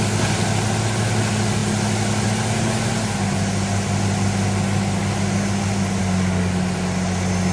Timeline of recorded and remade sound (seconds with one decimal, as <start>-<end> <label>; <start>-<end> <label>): 0.0-7.5 recorded